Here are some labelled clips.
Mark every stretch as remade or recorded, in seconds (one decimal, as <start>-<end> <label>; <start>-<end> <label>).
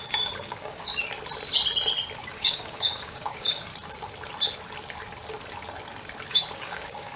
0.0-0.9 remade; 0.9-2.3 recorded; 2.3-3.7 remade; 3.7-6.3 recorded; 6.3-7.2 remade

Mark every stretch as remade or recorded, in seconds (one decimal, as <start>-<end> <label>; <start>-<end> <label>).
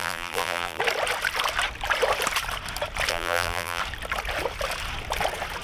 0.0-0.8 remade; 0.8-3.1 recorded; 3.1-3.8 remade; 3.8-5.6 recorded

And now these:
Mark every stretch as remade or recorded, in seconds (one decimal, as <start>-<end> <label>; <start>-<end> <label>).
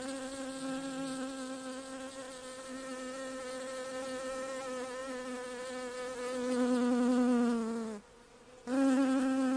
0.0-9.6 recorded